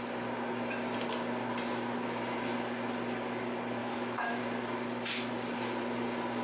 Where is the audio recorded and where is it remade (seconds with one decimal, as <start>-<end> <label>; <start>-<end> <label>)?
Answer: 0.0-3.8 recorded; 3.8-4.4 remade; 4.4-6.4 recorded